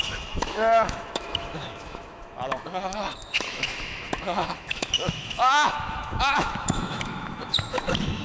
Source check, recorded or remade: remade